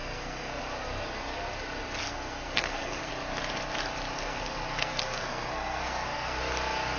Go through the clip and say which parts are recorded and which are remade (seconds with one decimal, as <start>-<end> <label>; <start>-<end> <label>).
0.0-0.6 remade; 0.6-2.0 recorded; 2.0-3.1 remade; 3.1-4.1 recorded; 4.1-6.4 remade; 6.4-7.0 recorded